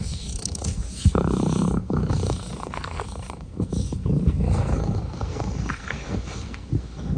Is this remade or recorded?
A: remade